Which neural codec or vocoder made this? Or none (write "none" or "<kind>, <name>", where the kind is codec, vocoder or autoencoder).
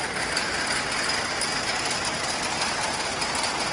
none